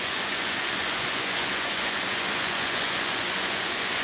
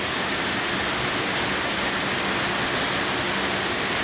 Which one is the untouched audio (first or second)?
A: second